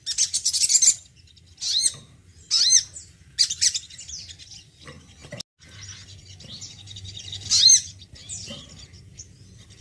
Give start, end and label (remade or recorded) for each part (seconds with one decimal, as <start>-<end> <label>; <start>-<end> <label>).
0.0-9.8 recorded